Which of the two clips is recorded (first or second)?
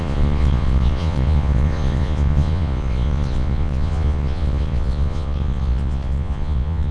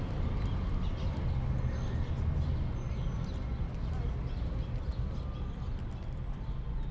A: second